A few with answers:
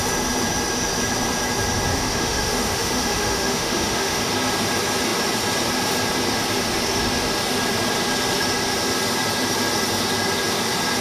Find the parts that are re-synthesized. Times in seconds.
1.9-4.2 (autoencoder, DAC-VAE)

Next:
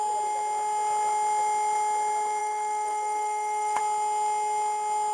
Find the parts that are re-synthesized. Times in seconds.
2.4-3.8 (autoencoder, DAC-VAE)

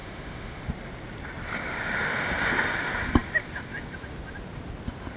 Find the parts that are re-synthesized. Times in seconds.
0.0-0.6 (autoencoder, DAC-VAE); 1.7-2.3

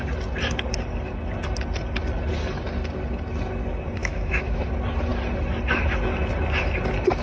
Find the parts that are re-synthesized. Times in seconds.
4.0-4.6 (autoencoder, DAC-VAE)

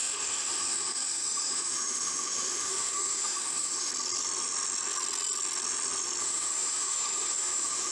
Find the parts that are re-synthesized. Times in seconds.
0.0-3.9 (autoencoder, DAC-VAE); 6.2-7.9

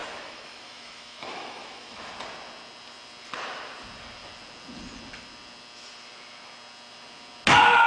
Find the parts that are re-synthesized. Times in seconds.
0.0-2.1 (autoencoder, DAC-VAE)